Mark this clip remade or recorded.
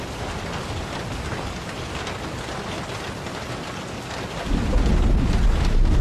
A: recorded